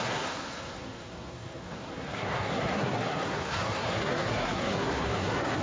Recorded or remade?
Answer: remade